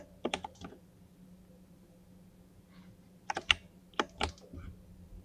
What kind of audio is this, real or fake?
real